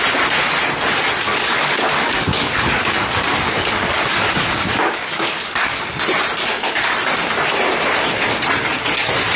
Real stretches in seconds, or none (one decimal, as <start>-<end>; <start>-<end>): 0.0-1.3; 5.9-6.4; 6.9-9.4